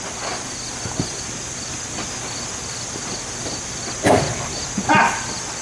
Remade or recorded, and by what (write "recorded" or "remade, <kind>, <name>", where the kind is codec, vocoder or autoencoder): recorded